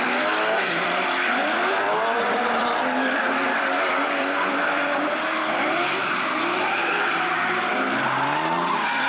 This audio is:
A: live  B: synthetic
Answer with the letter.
B